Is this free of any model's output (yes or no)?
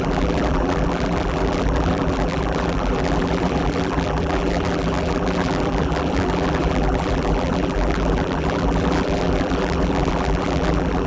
no